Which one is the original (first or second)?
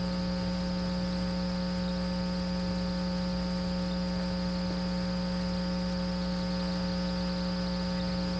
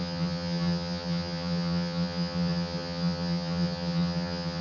first